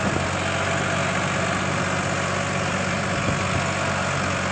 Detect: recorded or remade recorded